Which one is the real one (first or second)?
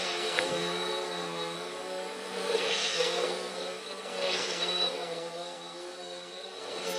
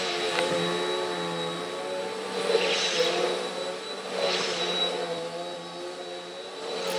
second